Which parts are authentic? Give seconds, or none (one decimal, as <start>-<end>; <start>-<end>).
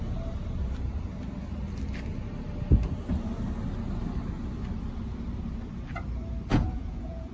0.0-6.5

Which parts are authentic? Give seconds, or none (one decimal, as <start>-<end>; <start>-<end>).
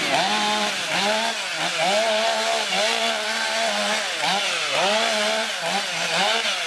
0.0-6.7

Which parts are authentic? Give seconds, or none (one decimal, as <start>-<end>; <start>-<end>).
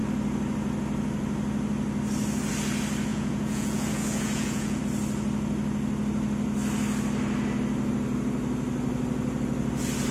0.0-3.1; 4.8-10.1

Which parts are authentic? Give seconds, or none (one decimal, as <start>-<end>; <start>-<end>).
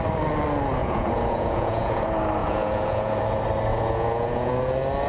0.0-0.8; 2.0-2.4; 3.1-3.7; 4.5-5.1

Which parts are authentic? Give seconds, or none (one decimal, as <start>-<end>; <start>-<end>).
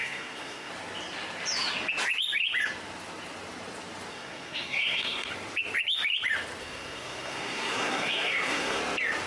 0.7-4.1; 5.3-6.6; 8.8-9.3